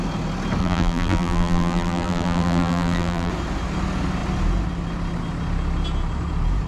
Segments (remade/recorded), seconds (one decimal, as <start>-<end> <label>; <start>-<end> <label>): 0.0-0.6 recorded; 0.6-3.3 remade; 3.3-6.7 recorded